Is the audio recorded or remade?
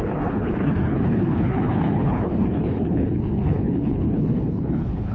remade